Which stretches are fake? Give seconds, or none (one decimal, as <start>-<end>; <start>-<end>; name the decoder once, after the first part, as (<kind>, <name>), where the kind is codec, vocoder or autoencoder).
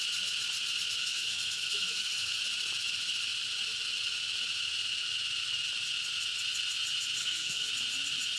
1.0-2.4 (codec, SNAC); 7.2-7.7